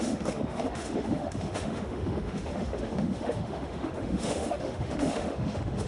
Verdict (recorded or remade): remade